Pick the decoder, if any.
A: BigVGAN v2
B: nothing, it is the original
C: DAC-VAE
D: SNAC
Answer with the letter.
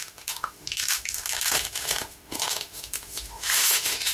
C